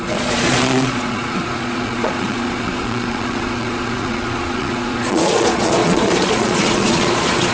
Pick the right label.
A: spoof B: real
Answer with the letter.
A